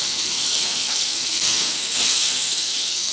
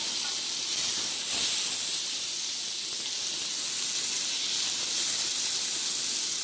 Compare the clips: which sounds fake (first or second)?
first